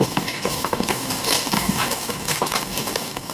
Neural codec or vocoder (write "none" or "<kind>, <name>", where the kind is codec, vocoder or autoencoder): codec, DAC